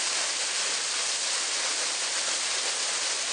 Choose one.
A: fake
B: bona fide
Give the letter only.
B